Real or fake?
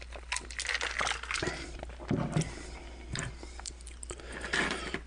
real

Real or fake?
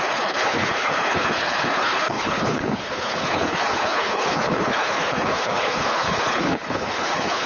fake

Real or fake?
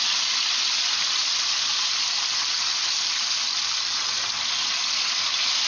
real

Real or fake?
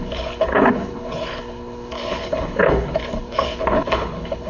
fake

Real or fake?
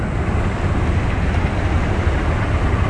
real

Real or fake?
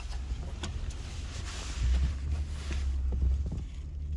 real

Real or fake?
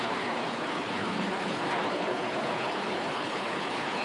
fake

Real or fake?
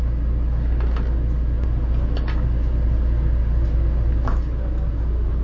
real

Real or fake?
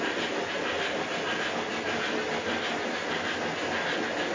real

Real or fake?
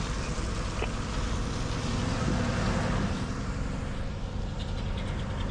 real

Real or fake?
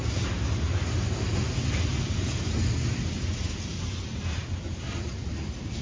real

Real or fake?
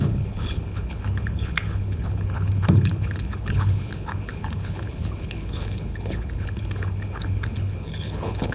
fake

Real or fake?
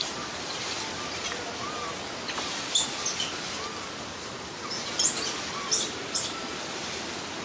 real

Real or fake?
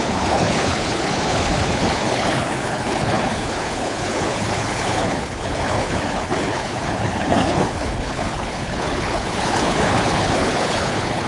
fake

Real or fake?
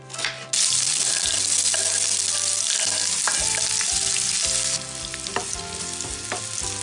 real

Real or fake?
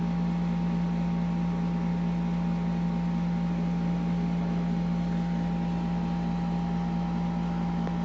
real